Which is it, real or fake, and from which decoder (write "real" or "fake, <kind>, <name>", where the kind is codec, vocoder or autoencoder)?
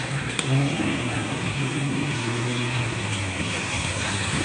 fake, codec, SNAC